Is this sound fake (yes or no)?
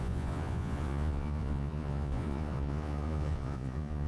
yes